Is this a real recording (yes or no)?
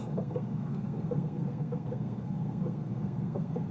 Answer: no